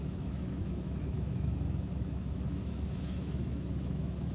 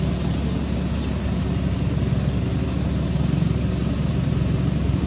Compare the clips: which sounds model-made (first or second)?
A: first